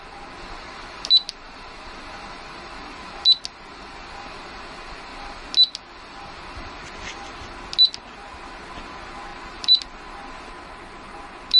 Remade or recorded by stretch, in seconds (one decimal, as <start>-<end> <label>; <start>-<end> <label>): 0.0-9.3 recorded; 9.3-9.8 remade; 9.8-11.6 recorded